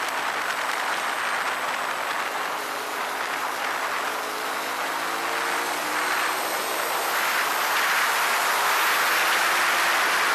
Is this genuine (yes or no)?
yes